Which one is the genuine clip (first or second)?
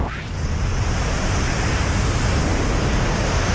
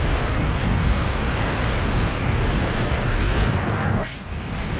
first